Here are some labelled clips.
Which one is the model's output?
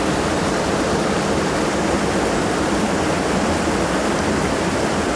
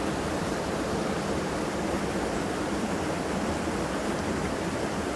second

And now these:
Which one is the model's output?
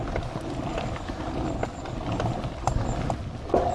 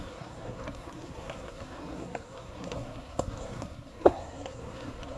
second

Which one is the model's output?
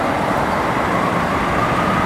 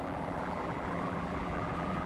second